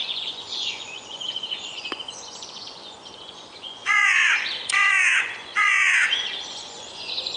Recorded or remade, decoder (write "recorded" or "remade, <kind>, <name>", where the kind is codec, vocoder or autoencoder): remade, vocoder, Vocos